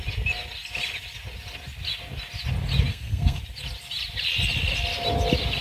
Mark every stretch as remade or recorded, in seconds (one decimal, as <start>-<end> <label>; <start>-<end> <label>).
0.0-2.9 recorded; 2.9-3.4 remade; 3.4-5.6 recorded